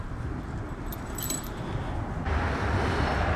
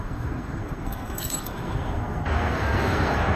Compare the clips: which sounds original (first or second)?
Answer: first